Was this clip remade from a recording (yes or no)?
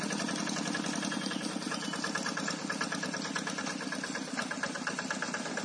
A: no